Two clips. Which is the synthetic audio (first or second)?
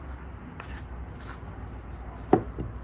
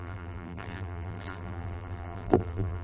second